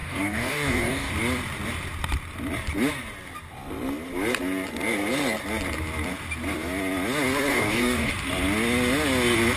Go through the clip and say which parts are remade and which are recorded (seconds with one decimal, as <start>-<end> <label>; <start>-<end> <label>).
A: 0.0-1.1 remade; 1.1-7.5 recorded; 7.5-8.1 remade; 8.1-9.6 recorded